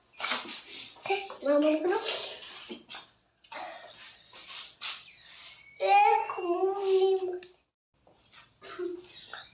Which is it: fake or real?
real